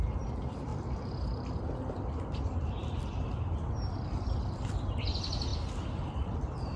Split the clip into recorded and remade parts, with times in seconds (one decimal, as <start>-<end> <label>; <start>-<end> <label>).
0.0-5.5 remade; 5.5-6.1 recorded; 6.1-6.8 remade

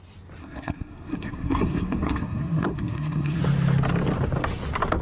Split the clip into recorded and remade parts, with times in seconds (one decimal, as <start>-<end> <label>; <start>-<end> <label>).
0.0-0.4 recorded; 0.4-3.4 remade; 3.4-5.0 recorded